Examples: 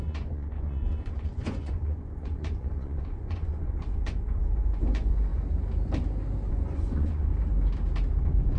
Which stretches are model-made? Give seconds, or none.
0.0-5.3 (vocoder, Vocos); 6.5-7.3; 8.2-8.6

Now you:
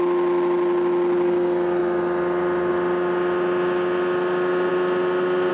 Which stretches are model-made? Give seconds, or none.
none

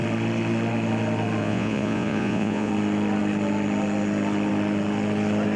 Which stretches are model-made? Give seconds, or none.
1.4-2.7 (vocoder, Vocos)

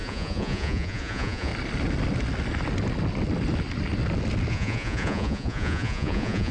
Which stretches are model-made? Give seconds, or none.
0.0-1.5 (vocoder, Vocos); 4.5-6.5